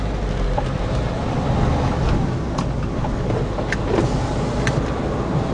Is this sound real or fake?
real